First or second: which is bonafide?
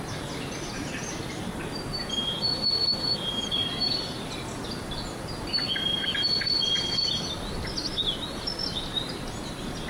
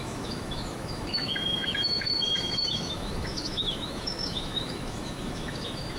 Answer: first